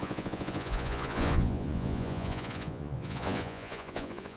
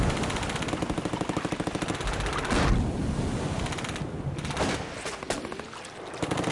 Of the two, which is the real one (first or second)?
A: second